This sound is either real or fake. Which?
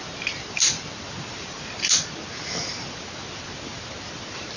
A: real